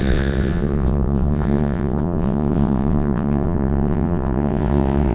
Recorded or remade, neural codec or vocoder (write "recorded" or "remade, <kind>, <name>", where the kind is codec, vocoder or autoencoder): remade, vocoder, WaveNeXt